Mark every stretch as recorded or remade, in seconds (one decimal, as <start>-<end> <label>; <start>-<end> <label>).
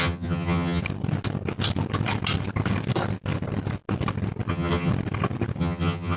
0.0-0.8 remade; 0.8-4.5 recorded; 4.5-4.9 remade; 4.9-5.6 recorded; 5.6-6.2 remade